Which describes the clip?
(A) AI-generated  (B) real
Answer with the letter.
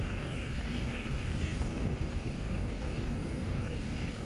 A